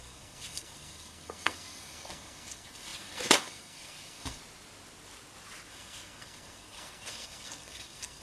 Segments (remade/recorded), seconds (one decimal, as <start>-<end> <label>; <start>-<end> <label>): 0.0-4.4 remade; 4.4-5.7 recorded; 5.7-8.2 remade